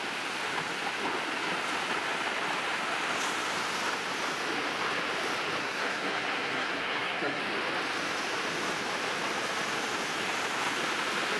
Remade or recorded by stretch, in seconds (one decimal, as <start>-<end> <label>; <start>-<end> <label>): 0.0-5.6 recorded; 5.6-7.4 remade; 7.4-11.4 recorded